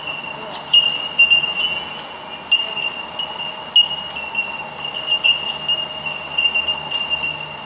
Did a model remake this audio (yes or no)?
no